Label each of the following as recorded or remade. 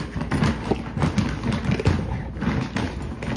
recorded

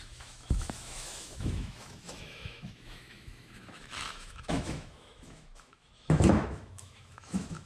remade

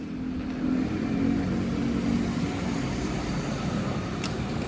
recorded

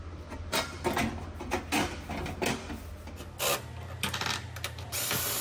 recorded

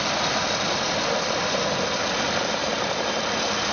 remade